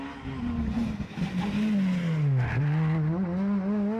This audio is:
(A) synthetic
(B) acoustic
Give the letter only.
B